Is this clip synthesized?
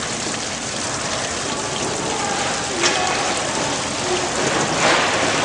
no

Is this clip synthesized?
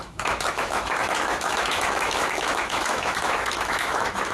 yes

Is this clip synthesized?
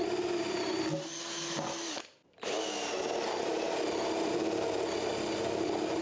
no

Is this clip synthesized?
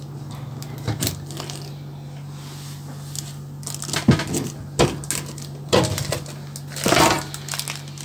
no